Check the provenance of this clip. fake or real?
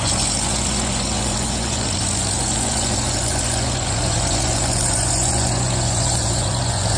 fake